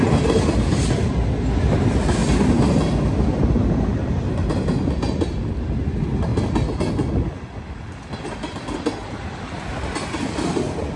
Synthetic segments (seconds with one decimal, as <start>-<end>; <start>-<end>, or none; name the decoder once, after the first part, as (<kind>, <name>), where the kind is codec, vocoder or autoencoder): none

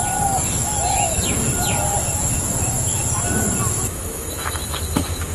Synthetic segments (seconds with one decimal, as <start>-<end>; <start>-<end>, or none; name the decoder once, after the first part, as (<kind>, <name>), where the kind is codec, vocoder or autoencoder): 0.6-1.5 (autoencoder, DAC-VAE); 2.2-2.9; 3.7-5.3

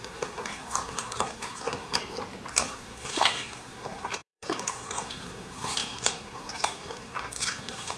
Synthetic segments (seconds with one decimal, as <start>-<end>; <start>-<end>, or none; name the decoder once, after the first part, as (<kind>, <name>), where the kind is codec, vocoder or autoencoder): 0.0-2.0 (codec, SNAC); 2.5-8.0

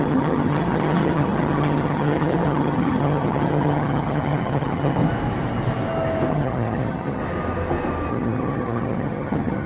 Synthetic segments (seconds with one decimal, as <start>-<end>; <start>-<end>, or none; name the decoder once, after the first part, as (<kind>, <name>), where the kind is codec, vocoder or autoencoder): 0.0-5.0 (vocoder, HiFi-GAN); 6.3-7.2; 8.1-9.7

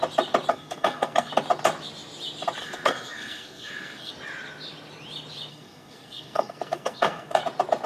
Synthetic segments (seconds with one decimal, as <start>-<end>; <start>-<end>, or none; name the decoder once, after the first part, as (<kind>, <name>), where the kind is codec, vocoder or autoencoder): 0.5-1.3 (codec, SNAC); 2.6-4.1; 5.5-7.4

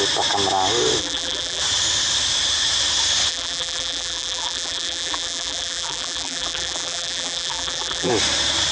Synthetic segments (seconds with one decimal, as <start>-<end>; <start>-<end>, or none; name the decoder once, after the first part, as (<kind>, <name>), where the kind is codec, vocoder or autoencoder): 1.0-1.6 (vocoder, BigVGAN v2); 3.3-8.1

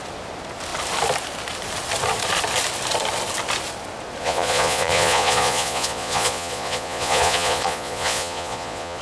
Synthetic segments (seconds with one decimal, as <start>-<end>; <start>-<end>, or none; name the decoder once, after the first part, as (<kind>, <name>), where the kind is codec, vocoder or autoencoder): 4.2-9.0 (vocoder, Vocos)

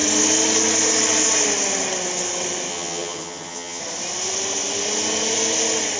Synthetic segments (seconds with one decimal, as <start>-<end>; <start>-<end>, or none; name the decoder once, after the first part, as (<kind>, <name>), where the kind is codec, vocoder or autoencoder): 2.7-3.8 (vocoder, HiFi-GAN)